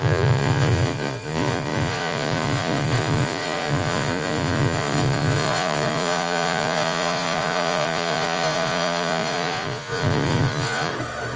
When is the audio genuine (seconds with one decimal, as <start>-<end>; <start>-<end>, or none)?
10.9-11.4